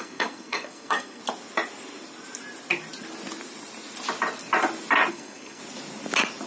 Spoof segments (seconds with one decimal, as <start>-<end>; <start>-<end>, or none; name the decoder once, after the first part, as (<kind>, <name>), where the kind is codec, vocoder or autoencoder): 0.0-1.2 (codec, SNAC); 5.1-5.6